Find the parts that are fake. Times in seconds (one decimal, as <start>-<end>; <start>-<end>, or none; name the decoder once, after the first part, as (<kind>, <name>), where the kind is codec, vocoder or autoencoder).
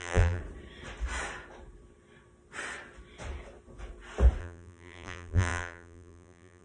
0.0-0.4 (vocoder, BigVGAN v2); 4.4-6.6